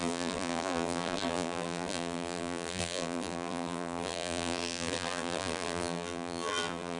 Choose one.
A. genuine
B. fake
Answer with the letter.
B